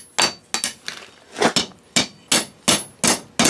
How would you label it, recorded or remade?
recorded